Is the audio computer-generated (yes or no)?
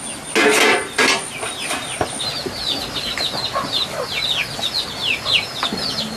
no